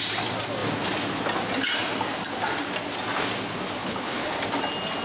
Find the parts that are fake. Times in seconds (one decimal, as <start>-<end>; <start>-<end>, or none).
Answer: 3.8-4.4

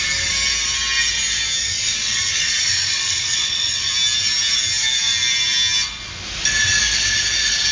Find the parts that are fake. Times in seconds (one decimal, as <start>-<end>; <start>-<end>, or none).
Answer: 1.6-3.9